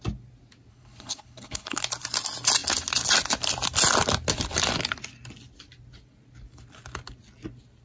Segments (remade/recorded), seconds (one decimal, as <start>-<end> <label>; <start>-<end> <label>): 0.0-0.7 recorded; 0.7-1.8 remade; 1.8-7.8 recorded